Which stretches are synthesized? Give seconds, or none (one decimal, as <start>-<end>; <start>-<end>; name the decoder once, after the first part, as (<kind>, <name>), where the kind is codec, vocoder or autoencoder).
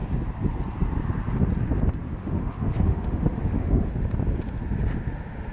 2.2-3.9 (autoencoder, DAC-VAE)